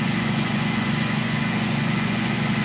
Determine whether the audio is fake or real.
fake